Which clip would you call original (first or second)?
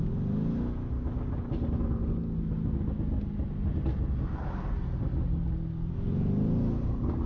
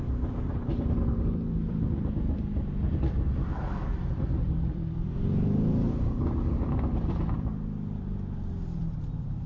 first